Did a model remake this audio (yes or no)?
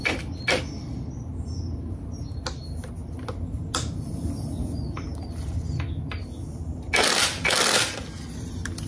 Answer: no